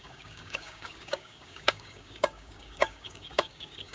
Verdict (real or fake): fake